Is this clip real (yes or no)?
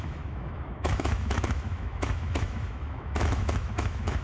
no